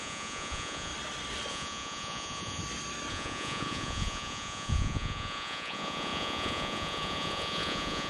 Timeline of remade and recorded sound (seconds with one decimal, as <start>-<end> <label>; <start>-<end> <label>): 0.0-0.9 remade; 0.9-1.5 recorded; 1.5-2.6 remade; 2.6-3.1 recorded; 3.1-8.1 remade